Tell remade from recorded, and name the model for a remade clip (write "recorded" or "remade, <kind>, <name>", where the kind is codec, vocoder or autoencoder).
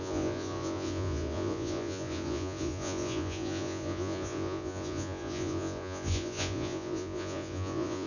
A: remade, vocoder, Vocos